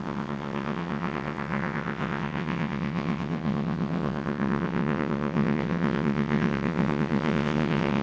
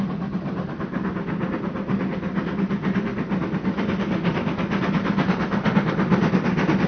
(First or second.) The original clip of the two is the second